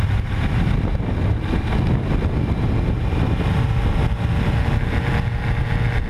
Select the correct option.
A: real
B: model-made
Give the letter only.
A